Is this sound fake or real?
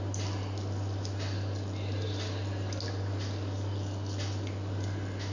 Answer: real